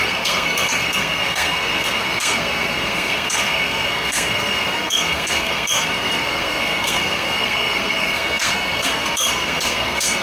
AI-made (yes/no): yes